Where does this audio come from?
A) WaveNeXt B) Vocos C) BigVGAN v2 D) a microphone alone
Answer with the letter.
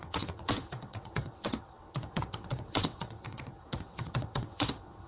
A